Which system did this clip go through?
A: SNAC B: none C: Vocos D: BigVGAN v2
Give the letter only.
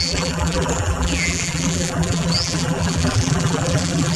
D